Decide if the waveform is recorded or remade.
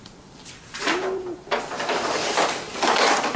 remade